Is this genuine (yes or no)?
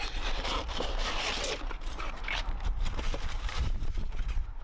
no